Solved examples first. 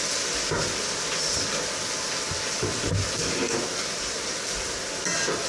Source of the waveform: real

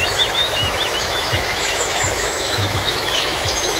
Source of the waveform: fake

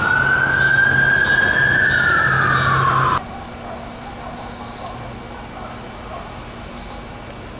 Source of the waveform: real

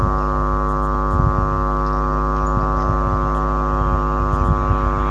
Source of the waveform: real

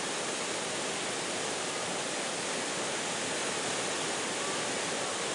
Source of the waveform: real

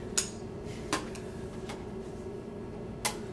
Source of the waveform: real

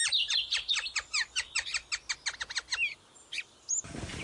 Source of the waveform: real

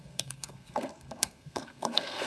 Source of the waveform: fake